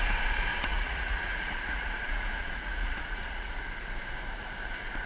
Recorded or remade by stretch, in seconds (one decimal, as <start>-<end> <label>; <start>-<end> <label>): 0.0-0.5 recorded; 0.5-3.6 remade; 3.6-5.1 recorded